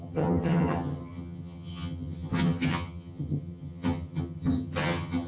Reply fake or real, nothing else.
fake